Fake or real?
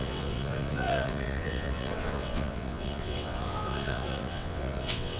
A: fake